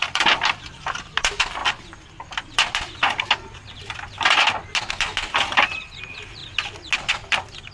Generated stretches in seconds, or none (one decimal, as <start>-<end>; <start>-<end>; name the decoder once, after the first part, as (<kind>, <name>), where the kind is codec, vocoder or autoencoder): none